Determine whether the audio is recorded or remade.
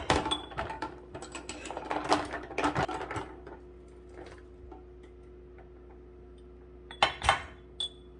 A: recorded